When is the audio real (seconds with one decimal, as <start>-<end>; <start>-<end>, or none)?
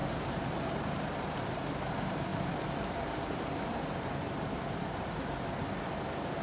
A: 1.0-2.3; 5.5-6.4